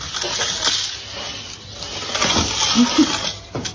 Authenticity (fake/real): real